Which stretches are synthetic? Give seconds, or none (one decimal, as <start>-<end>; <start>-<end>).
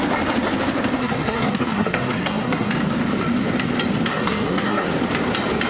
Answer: 1.0-2.7; 4.1-4.9